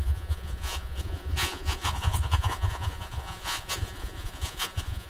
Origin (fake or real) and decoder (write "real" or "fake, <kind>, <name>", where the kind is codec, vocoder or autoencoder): fake, vocoder, Vocos